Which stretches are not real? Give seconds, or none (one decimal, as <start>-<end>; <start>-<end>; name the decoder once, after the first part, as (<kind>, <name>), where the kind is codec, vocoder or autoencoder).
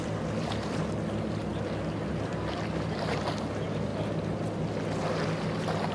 none